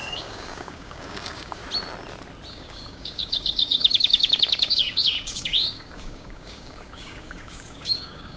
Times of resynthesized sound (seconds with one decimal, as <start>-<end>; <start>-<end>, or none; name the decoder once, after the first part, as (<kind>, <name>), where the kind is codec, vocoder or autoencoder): 0.0-1.6 (codec, DAC); 2.5-8.4